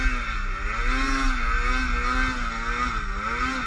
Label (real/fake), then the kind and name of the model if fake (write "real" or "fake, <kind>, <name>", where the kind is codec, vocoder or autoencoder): real